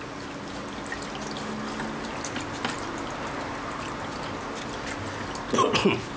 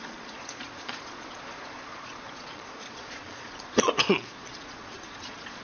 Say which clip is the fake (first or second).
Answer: second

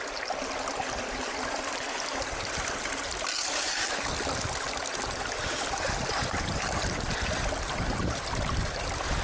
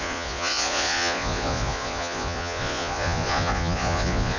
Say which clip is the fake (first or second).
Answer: second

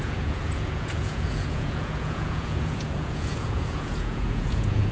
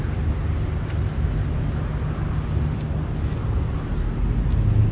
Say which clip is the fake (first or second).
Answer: first